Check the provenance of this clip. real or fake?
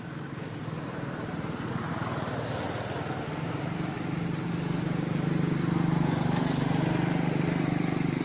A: real